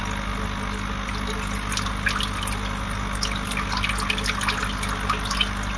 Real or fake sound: real